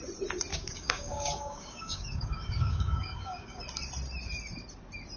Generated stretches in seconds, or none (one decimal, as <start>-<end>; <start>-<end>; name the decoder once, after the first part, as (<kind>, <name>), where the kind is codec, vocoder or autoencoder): 0.5-3.6 (codec, DAC)